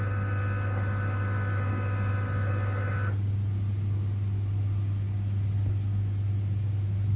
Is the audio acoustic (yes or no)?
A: yes